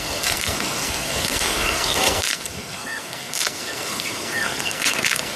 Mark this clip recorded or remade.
remade